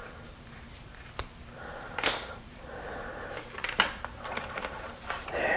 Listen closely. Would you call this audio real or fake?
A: fake